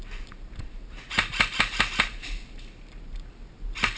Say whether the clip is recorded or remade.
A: recorded